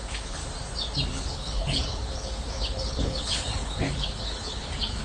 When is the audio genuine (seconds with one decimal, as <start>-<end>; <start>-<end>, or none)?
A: 0.4-1.1